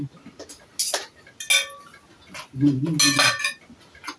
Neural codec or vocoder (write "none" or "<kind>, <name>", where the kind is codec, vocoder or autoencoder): none